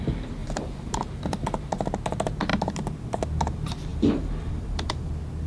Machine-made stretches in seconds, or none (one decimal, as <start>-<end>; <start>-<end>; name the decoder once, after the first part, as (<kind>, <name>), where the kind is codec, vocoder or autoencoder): 0.4-1.0 (vocoder, BigVGAN v2); 3.9-5.1